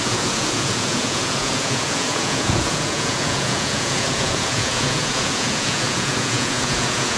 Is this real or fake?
fake